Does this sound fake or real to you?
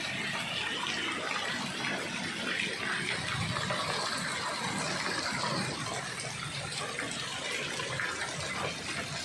real